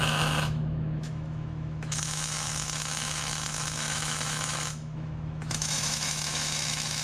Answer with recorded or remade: remade